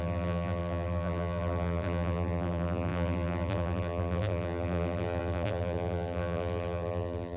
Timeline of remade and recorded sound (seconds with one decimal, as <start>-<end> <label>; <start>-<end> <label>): 0.0-7.4 remade